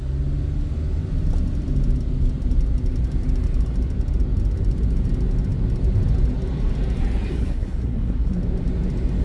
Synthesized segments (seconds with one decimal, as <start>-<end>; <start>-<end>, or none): 7.4-8.4